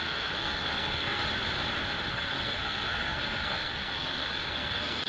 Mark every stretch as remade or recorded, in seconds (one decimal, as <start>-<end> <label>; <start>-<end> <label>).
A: 0.0-1.2 remade; 1.2-2.1 recorded; 2.1-5.1 remade